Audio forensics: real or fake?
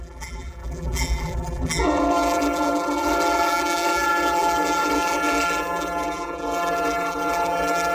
fake